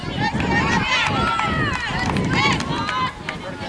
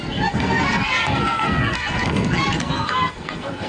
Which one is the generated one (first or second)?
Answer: second